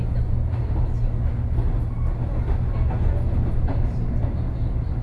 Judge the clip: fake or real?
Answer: real